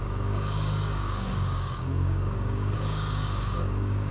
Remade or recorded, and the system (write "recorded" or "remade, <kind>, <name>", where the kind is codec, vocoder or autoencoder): remade, codec, DAC